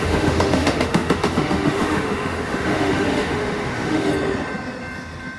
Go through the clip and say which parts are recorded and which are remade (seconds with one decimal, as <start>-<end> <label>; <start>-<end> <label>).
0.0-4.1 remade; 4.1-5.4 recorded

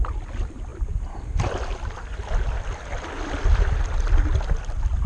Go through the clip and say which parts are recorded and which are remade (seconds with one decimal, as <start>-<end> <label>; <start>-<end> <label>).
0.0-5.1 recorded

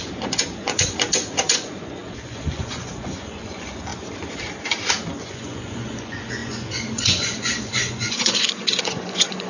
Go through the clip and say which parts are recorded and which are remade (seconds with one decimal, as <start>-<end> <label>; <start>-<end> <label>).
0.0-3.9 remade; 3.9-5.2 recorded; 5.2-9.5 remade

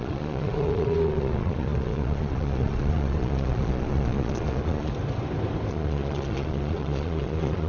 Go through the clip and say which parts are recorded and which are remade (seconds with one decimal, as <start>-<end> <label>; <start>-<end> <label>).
0.0-4.9 remade; 4.9-5.7 recorded; 5.7-7.7 remade

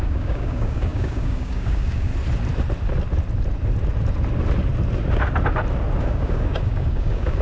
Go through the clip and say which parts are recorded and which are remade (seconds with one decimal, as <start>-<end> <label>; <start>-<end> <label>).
0.0-2.1 remade; 2.1-6.0 recorded; 6.0-7.4 remade